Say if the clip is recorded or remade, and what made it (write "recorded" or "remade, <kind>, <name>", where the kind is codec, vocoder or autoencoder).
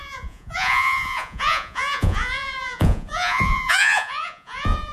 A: remade, vocoder, Vocos